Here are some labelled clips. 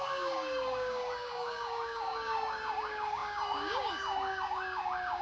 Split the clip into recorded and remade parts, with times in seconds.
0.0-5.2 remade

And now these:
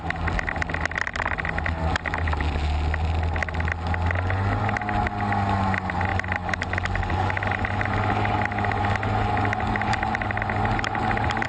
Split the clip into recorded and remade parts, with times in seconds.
0.0-11.5 recorded

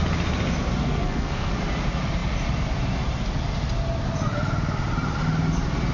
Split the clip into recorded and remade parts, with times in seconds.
0.0-0.8 recorded; 0.8-1.5 remade; 1.5-5.9 recorded

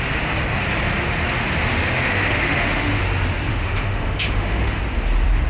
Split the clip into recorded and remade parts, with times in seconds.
0.0-1.7 recorded; 1.7-3.0 remade; 3.0-3.5 recorded; 3.5-4.8 remade; 4.8-5.5 recorded

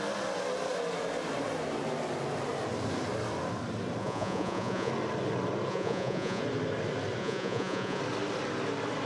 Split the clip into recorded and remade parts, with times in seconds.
0.0-4.0 recorded; 4.0-4.9 remade; 4.9-5.7 recorded; 5.7-6.4 remade; 6.4-7.2 recorded; 7.2-8.0 remade; 8.0-9.1 recorded

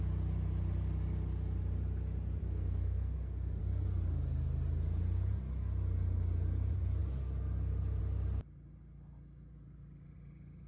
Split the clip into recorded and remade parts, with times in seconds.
0.0-2.4 recorded; 2.4-3.6 remade; 3.6-10.7 recorded

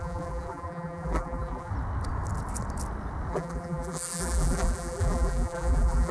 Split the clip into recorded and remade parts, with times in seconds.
0.0-1.7 remade; 1.7-3.3 recorded; 3.3-6.1 remade

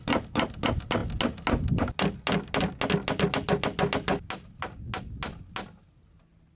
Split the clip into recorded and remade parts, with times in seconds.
0.0-6.6 recorded